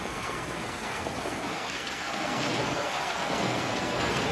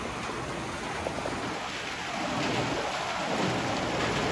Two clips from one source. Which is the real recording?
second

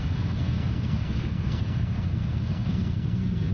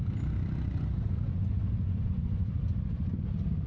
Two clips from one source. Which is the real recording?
second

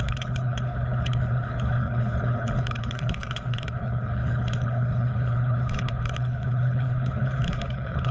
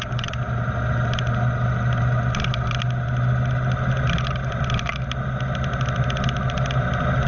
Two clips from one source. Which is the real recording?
second